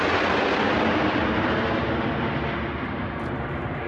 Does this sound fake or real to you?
real